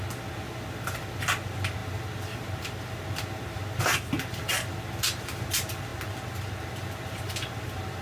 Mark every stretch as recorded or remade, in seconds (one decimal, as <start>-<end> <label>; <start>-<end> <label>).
0.0-8.0 recorded